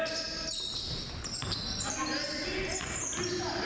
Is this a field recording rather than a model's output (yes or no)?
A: yes